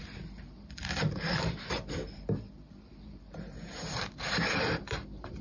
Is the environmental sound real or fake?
fake